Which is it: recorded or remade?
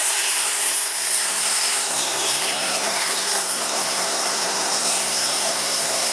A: remade